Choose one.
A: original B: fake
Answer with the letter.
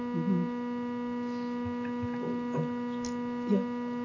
A